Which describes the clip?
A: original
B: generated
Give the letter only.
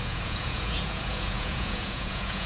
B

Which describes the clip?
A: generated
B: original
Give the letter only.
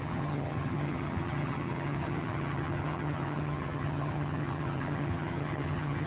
A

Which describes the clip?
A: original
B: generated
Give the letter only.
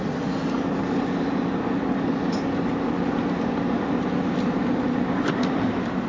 A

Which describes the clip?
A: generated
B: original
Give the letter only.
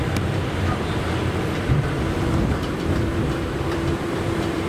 A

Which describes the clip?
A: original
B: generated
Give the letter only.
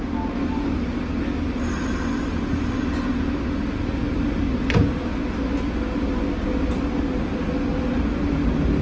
A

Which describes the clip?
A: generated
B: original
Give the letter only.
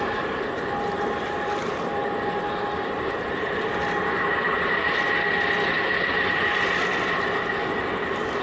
B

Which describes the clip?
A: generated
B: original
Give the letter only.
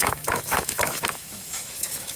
A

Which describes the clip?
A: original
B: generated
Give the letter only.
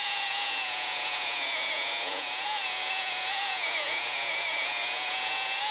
B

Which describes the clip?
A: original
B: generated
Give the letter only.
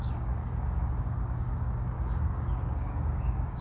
B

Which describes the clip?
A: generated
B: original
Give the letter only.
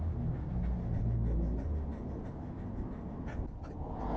B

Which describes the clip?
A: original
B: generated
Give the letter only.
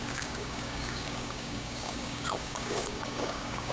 B